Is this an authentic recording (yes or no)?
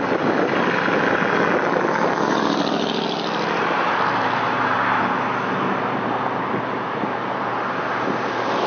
yes